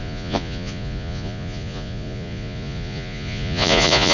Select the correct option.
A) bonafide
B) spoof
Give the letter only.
B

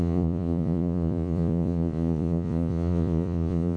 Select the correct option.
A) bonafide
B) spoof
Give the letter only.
B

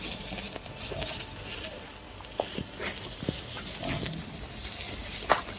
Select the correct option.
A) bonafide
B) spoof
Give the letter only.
A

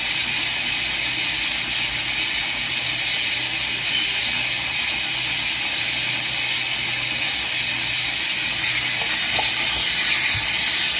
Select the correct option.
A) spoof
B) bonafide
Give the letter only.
B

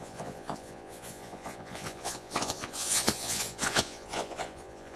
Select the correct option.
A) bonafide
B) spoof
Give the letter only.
B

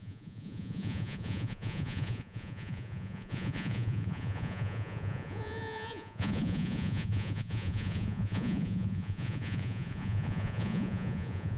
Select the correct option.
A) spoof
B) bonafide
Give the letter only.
A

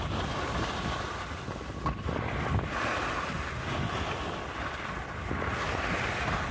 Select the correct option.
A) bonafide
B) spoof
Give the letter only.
A